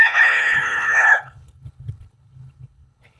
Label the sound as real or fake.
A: fake